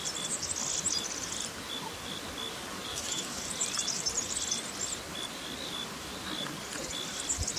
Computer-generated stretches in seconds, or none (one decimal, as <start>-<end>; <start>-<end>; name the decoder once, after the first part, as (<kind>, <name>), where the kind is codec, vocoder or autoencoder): 2.9-3.4 (autoencoder, DAC-VAE)